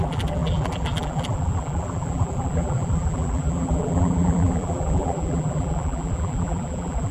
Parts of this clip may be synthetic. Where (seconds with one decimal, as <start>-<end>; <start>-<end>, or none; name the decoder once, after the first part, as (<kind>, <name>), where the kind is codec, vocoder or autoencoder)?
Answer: 0.0-7.1 (vocoder, BigVGAN v2)